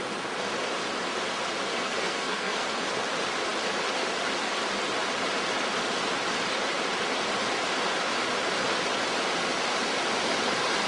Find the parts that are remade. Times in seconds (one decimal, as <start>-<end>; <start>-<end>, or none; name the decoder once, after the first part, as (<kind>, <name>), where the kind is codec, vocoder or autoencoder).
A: 1.8-2.8 (codec, SNAC)